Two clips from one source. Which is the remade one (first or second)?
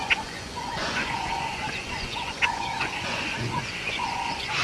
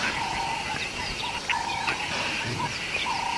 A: first